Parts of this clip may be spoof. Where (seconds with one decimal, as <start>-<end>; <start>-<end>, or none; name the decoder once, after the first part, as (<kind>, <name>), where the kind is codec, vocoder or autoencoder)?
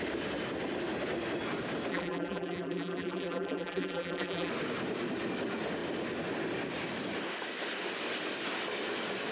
1.9-4.5 (vocoder, BigVGAN v2)